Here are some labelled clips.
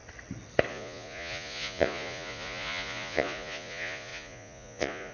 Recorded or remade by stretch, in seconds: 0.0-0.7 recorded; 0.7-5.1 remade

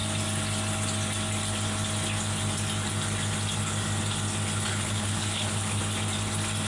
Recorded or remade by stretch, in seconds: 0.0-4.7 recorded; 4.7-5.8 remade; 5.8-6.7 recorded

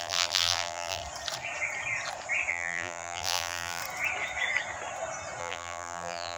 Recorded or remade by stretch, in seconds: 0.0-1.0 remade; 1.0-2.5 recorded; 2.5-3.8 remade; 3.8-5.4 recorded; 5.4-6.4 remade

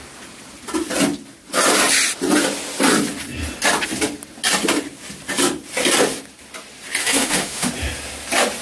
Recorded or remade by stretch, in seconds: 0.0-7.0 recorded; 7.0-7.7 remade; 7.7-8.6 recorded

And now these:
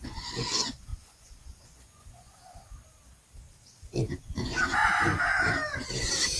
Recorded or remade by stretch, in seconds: 0.0-2.7 remade; 2.7-4.3 recorded; 4.3-4.8 remade; 4.8-6.4 recorded

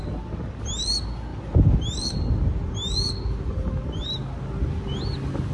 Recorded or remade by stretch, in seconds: 0.0-5.5 recorded

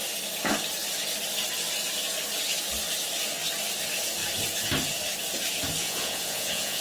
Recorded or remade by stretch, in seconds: 0.0-5.8 recorded; 5.8-6.8 remade